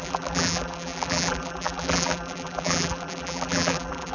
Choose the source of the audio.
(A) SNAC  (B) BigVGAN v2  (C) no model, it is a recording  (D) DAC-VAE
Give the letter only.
B